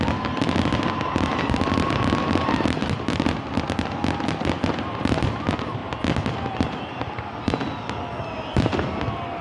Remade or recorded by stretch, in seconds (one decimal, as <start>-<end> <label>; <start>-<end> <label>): 0.0-9.4 recorded